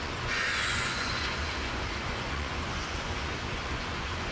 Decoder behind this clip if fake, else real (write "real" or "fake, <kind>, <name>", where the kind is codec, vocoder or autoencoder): fake, vocoder, Vocos